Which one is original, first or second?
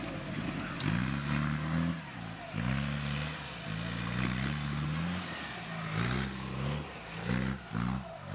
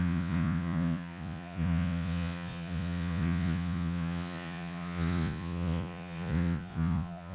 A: first